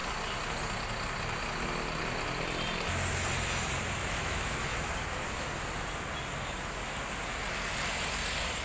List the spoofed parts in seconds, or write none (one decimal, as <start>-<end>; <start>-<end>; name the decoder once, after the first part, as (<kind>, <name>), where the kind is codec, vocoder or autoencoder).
4.0-4.9 (autoencoder, DAC-VAE)